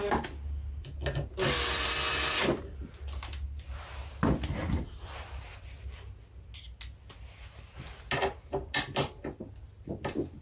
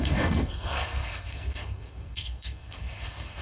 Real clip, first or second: first